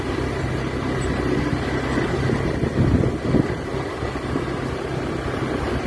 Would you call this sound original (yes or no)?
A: yes